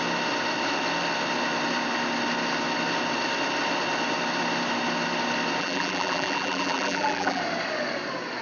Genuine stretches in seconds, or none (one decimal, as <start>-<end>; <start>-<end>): 0.0-5.6; 7.4-8.4